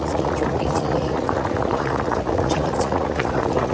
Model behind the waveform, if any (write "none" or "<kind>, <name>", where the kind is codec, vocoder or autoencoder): vocoder, Vocos